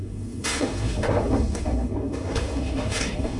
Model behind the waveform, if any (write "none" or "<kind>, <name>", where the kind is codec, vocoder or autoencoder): codec, SNAC